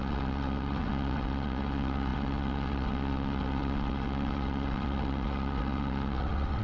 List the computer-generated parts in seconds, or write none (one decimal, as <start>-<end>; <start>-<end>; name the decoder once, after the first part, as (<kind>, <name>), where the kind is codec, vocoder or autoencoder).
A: 0.0-6.6 (vocoder, WaveNeXt)